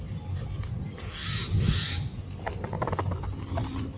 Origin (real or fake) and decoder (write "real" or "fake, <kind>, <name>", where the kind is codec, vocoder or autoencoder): real